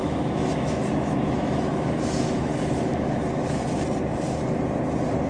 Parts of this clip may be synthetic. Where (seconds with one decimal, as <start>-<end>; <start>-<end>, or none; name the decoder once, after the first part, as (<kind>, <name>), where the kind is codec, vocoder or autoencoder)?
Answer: 0.0-3.2 (autoencoder, DAC-VAE)